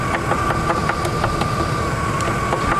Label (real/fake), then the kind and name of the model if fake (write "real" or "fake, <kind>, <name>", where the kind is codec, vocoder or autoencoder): real